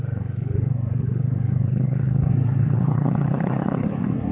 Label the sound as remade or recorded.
remade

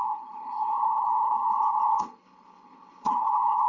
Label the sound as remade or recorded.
remade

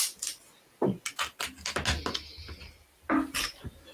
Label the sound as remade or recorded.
recorded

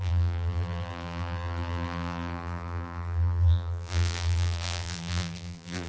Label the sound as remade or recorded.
remade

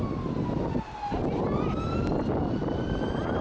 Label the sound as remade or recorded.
recorded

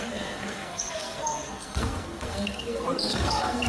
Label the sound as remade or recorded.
remade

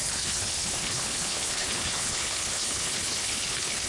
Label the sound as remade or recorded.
remade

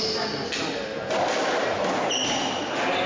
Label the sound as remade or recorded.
recorded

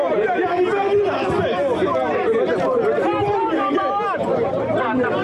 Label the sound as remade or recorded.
remade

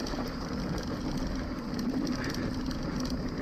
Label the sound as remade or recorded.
recorded